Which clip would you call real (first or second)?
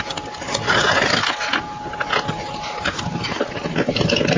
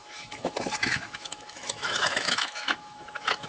first